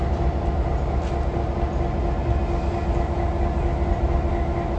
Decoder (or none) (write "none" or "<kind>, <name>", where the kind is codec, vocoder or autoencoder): none